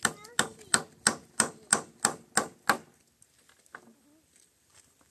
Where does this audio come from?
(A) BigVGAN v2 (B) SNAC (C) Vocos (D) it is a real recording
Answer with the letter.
D